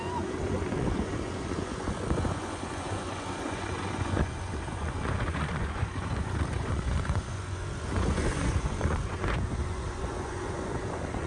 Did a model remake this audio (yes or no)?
yes